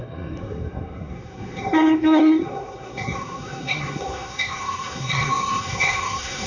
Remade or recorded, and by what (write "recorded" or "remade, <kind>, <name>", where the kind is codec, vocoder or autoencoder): remade, codec, SNAC